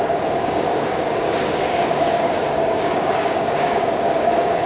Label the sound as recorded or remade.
remade